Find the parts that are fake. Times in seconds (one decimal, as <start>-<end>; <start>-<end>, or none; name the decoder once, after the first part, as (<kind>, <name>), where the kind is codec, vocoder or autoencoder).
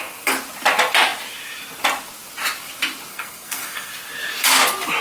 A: 3.1-3.9 (codec, SNAC)